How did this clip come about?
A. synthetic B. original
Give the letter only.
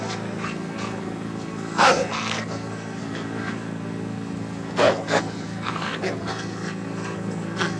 A